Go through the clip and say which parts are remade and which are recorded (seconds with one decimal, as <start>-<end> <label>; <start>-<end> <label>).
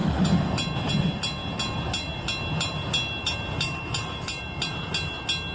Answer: 0.0-5.5 recorded